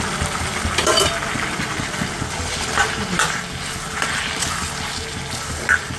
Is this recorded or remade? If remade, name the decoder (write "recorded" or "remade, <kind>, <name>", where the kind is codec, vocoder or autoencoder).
recorded